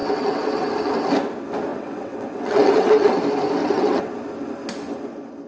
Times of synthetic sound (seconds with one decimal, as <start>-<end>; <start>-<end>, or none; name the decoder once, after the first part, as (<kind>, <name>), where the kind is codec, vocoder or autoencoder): 0.0-0.8 (vocoder, WaveNeXt); 1.7-3.2; 3.6-4.1